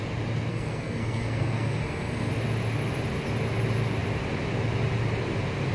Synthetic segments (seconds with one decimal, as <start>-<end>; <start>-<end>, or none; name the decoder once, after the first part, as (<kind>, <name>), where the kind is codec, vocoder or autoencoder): 0.5-2.3 (codec, SNAC)